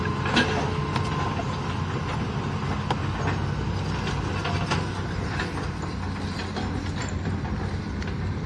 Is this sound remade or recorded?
recorded